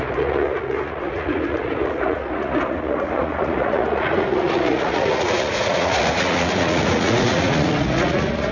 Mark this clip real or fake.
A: fake